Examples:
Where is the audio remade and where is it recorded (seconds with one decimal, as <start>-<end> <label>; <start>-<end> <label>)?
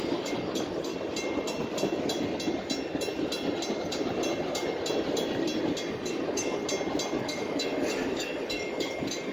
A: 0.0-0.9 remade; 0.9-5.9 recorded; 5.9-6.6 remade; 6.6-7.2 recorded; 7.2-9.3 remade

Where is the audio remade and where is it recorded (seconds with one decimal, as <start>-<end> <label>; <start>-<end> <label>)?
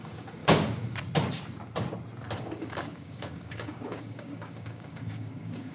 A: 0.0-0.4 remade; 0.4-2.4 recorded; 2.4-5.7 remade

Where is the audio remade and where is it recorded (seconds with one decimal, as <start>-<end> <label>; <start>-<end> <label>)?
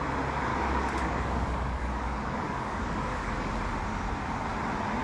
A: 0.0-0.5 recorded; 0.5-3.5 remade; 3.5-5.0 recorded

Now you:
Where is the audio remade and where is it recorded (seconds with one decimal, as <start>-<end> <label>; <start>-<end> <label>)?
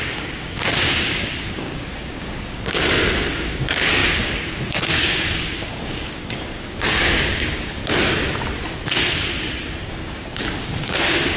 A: 0.0-7.8 remade; 7.8-9.9 recorded; 9.9-11.4 remade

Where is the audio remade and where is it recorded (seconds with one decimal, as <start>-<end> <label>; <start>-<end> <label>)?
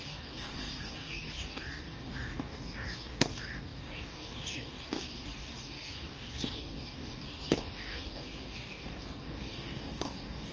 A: 0.0-10.5 remade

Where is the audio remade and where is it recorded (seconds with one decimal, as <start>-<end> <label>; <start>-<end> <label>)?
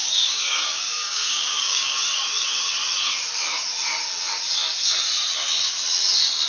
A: 0.0-2.0 remade; 2.0-6.5 recorded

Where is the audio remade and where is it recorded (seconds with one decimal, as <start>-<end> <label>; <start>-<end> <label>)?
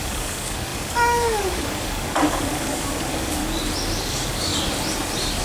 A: 0.0-3.4 remade; 3.4-4.0 recorded; 4.0-4.5 remade; 4.5-5.4 recorded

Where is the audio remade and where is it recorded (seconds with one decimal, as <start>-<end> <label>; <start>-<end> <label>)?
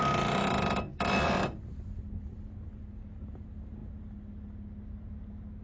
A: 0.0-5.6 recorded